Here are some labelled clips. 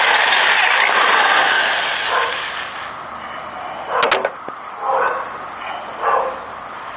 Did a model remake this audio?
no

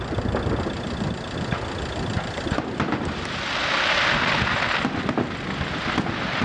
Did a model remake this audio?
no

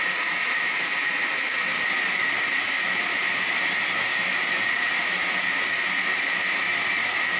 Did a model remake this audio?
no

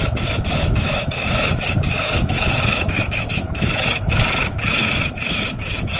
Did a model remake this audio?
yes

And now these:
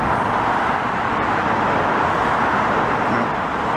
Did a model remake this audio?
no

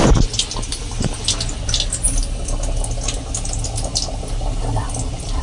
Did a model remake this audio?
no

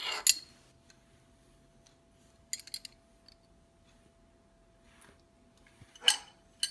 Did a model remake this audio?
no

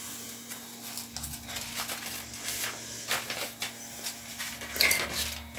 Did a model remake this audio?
no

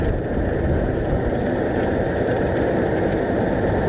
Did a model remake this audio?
no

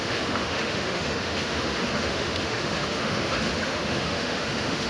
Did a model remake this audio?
yes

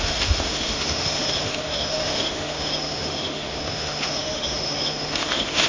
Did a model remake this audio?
yes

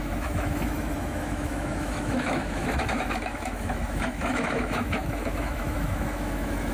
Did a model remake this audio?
yes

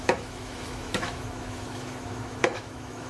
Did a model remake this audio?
yes